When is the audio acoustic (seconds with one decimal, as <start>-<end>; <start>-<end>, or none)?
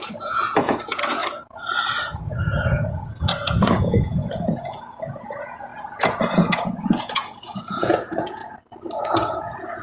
1.2-2.0; 8.4-9.0